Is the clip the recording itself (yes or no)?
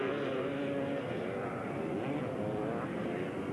yes